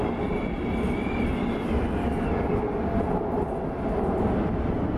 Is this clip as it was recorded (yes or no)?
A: yes